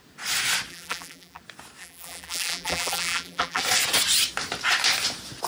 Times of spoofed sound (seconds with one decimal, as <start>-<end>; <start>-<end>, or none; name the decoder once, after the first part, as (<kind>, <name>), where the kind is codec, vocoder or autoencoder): 0.7-1.4 (vocoder, BigVGAN v2); 1.8-3.6